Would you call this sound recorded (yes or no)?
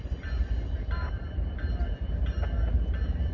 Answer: yes